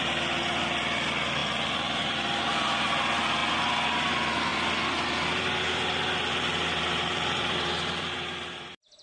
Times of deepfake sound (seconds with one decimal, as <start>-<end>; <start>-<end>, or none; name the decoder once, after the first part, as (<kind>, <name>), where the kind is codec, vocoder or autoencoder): 0.0-3.4 (vocoder, BigVGAN v2); 4.1-9.0